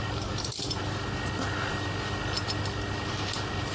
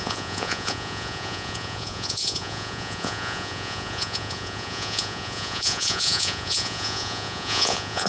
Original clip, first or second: first